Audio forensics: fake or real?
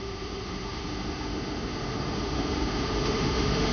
fake